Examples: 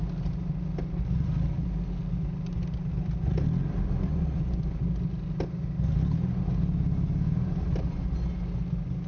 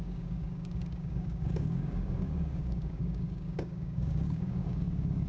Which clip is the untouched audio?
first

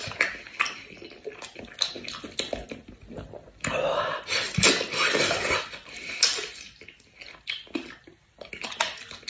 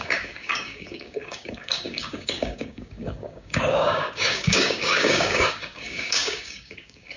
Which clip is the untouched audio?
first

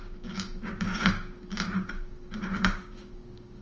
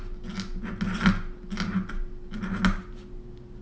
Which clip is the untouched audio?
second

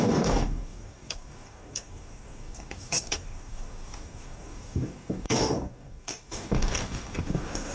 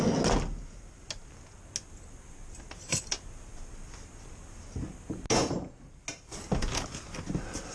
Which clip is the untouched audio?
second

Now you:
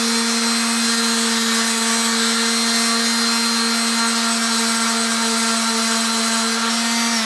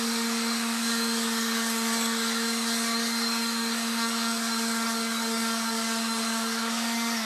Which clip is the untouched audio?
first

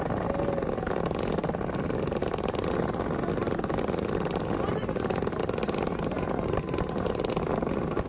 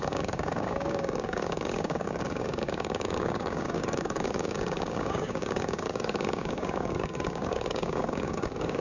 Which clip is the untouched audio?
first